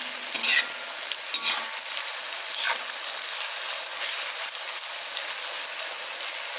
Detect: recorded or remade recorded